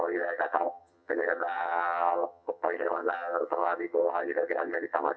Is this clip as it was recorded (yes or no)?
no